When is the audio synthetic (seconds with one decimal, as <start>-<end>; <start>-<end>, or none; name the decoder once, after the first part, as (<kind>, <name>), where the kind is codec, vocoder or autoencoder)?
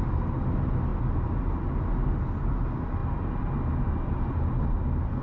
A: none